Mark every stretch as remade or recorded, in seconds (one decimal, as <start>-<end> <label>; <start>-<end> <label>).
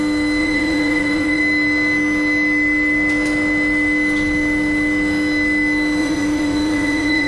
0.0-0.4 recorded; 0.4-1.4 remade; 1.4-6.0 recorded; 6.0-7.3 remade